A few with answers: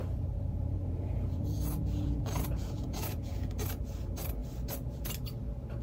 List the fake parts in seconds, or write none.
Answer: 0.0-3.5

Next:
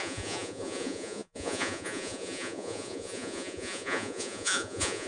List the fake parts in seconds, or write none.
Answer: 0.0-5.1

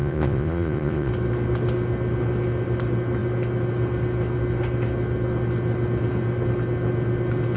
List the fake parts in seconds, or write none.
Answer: 0.0-1.1

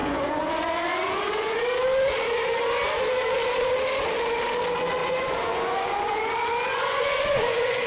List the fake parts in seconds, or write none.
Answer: 0.0-1.6; 5.0-6.3; 6.7-7.9

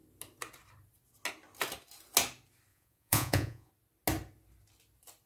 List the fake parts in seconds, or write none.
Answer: 2.7-3.7